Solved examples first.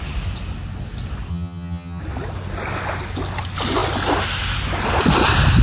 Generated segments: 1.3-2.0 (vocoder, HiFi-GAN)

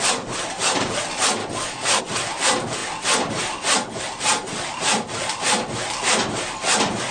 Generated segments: 1.4-2.0 (codec, DAC)

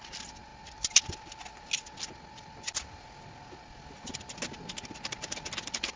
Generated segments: none